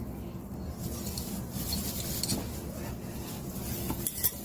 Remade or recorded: recorded